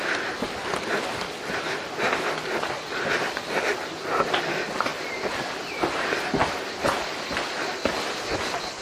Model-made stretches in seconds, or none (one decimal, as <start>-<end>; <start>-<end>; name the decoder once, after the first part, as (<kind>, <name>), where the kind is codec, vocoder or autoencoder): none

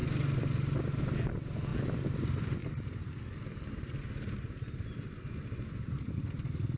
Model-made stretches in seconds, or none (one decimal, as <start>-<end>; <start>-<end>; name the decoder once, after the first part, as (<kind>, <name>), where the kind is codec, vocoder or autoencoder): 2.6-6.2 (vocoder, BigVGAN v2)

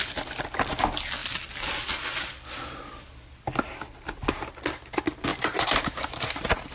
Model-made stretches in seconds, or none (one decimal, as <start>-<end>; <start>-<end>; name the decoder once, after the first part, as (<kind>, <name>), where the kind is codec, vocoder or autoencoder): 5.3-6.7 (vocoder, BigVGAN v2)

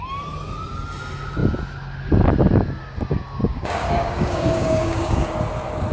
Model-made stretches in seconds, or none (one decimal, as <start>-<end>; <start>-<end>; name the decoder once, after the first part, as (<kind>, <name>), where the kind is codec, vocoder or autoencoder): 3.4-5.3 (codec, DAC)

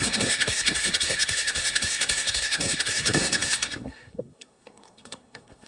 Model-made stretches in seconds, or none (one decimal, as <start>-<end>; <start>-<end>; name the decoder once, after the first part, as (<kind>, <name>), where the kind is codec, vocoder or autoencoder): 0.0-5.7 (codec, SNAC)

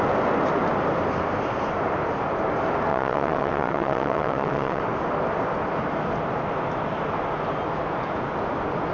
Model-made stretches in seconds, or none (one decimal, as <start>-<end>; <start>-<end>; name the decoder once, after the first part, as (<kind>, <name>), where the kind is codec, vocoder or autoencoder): 2.9-4.8 (vocoder, WaveNeXt)

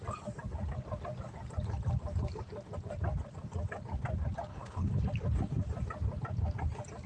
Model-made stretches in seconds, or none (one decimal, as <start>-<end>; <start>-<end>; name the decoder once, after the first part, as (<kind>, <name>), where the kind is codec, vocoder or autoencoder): 4.5-5.0 (codec, HILCodec)

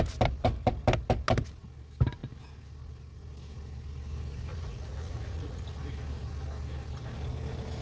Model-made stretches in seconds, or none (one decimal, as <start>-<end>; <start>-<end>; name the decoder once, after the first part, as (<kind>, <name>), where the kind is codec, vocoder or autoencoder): 4.5-5.8 (vocoder, Vocos)